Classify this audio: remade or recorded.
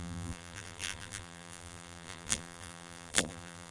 remade